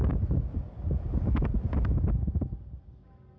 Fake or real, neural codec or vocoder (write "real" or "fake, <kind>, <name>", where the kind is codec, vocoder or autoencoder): real